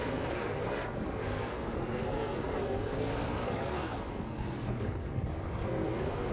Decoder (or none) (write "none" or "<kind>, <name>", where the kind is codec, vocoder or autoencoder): codec, SNAC